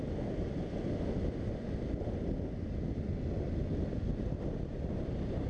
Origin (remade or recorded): recorded